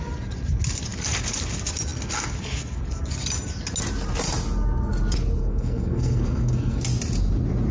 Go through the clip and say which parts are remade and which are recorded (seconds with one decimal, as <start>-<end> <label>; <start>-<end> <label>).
0.0-5.4 recorded; 5.4-6.8 remade; 6.8-7.7 recorded